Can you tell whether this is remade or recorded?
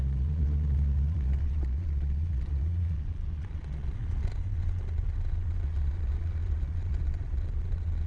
remade